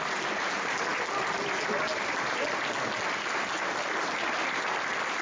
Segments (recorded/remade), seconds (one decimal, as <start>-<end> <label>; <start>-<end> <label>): 0.0-5.2 recorded